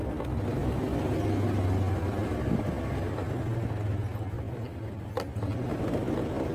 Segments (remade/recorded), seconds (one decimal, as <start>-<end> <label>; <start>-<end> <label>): 0.0-6.5 recorded